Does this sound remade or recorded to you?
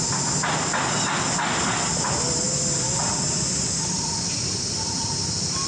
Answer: recorded